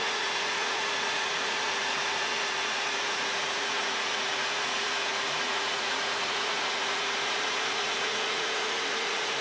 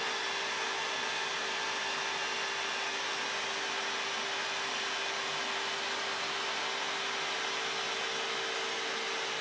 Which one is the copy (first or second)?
first